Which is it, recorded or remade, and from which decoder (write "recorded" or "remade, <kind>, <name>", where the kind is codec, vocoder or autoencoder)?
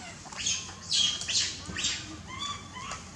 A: recorded